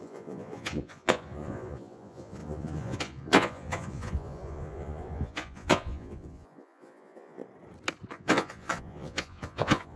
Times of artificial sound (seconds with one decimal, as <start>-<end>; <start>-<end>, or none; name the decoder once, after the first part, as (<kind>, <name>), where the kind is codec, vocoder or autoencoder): 0.0-7.4 (vocoder, Vocos); 8.1-10.0